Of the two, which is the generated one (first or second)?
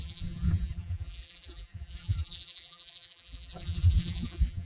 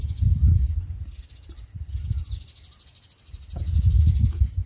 first